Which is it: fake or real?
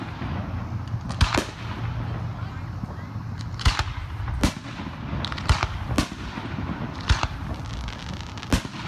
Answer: real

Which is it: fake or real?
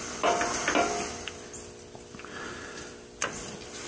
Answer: real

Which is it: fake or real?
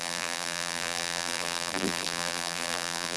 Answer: fake